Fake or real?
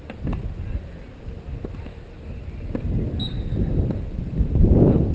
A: real